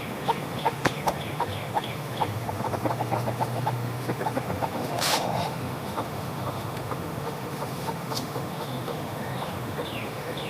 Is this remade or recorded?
remade